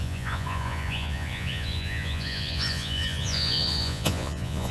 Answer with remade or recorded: remade